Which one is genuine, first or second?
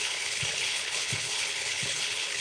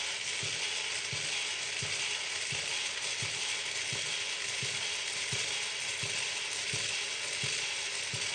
second